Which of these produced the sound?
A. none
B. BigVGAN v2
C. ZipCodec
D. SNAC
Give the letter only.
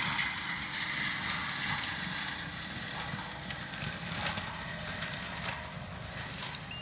A